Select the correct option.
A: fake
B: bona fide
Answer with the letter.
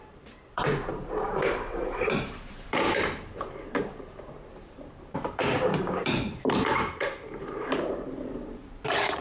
A